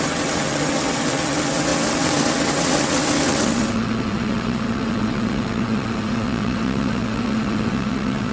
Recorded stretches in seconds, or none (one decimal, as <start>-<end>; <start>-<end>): none